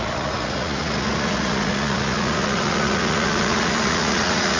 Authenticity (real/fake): fake